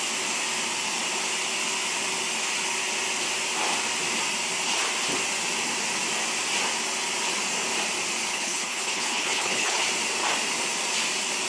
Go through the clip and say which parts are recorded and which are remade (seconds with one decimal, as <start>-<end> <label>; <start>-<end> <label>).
0.0-8.3 recorded; 8.3-9.8 remade; 9.8-11.5 recorded